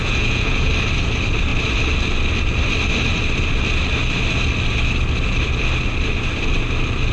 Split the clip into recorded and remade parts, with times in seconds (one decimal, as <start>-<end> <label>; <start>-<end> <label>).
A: 0.0-0.7 remade; 0.7-7.1 recorded

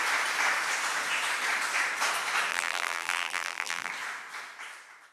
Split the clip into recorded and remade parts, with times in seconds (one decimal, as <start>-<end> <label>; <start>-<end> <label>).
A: 0.0-2.5 recorded; 2.5-3.9 remade; 3.9-5.1 recorded